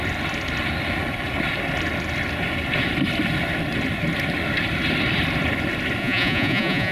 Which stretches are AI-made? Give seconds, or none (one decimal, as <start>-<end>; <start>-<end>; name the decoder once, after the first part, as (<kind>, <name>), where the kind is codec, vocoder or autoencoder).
6.0-6.9 (vocoder, Vocos)